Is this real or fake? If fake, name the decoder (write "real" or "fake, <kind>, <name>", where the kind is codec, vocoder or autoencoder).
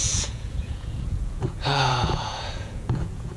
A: fake, vocoder, Vocos